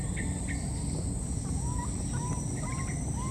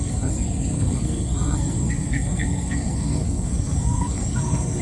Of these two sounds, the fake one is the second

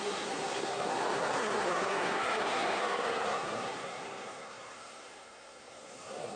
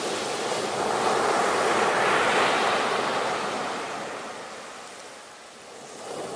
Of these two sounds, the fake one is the first